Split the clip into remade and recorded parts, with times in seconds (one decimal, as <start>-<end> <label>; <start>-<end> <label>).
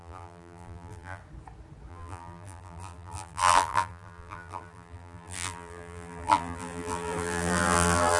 0.0-1.2 remade; 1.2-1.9 recorded; 1.9-8.2 remade